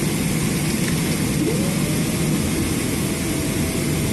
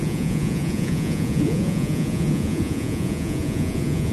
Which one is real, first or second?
first